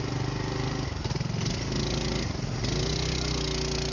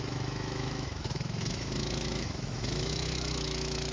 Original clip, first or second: first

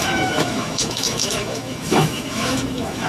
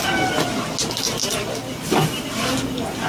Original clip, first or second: second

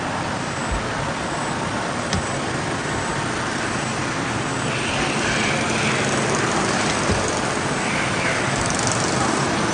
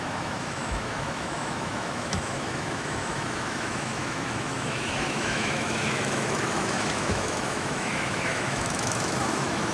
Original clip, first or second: first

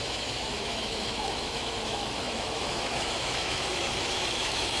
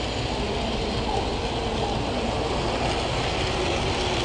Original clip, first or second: second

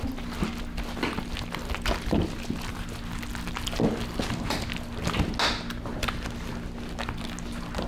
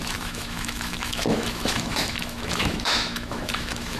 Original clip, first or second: first